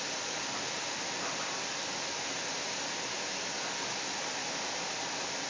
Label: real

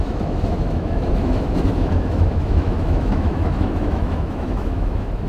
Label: fake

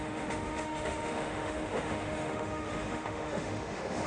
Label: fake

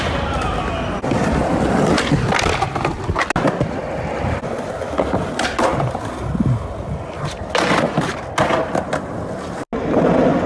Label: real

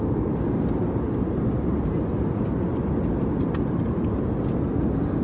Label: real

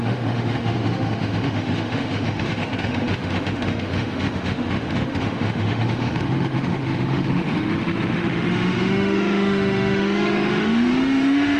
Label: fake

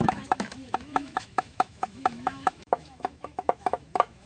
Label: fake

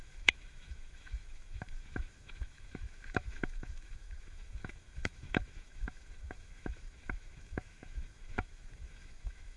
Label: fake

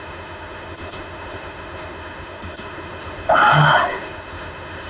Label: fake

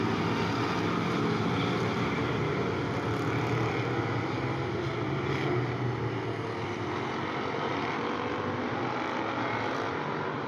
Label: real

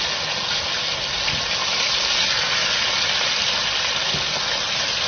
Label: real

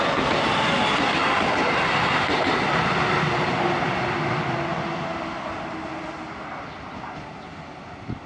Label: real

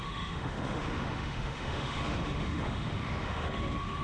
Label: fake